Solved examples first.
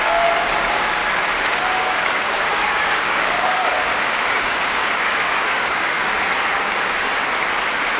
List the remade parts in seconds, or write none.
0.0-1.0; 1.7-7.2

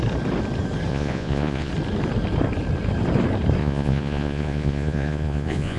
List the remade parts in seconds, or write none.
0.9-1.7; 3.6-5.8

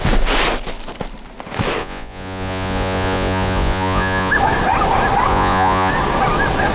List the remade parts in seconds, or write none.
1.8-4.3; 5.3-5.9

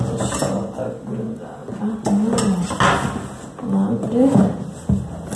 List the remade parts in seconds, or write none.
none

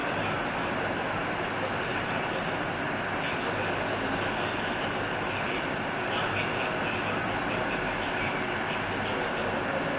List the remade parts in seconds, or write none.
none

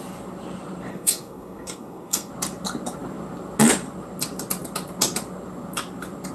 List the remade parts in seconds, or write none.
0.9-2.3

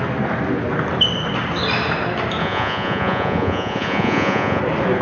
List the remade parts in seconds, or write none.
2.4-4.6